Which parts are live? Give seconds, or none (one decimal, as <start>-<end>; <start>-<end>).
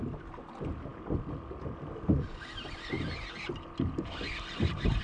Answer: 0.0-5.0